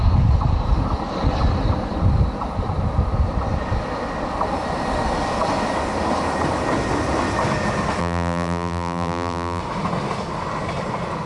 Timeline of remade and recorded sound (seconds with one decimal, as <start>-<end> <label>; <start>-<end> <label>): 0.0-8.0 recorded; 8.0-9.6 remade; 9.6-11.3 recorded

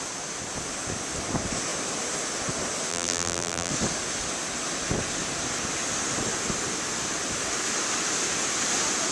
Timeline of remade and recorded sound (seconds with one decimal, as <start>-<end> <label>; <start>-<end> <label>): 0.0-2.9 recorded; 2.9-3.7 remade; 3.7-9.1 recorded

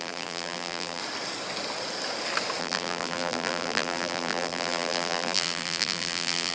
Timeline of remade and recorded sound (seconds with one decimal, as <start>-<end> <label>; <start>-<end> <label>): 0.0-1.0 remade; 1.0-2.6 recorded; 2.6-6.5 remade